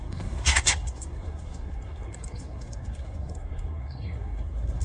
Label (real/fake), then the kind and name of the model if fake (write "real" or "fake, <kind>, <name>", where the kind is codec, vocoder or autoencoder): fake, codec, SNAC